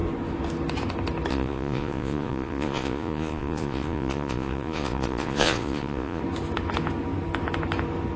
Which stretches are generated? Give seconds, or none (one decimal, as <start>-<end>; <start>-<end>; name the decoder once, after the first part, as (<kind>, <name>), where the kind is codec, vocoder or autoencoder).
1.3-6.2 (vocoder, Vocos)